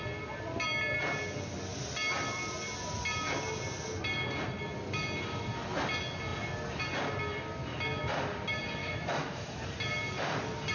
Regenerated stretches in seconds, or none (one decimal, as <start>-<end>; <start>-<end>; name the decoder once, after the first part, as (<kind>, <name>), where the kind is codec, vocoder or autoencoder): 8.8-9.6 (autoencoder, DAC-VAE)